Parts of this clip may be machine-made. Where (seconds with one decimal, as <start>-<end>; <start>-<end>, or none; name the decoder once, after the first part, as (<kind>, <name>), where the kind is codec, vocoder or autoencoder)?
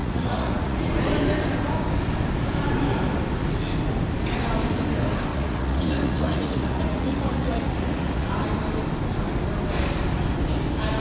0.0-0.9 (vocoder, Vocos); 5.3-8.3